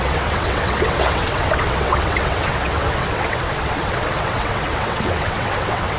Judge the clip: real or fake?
fake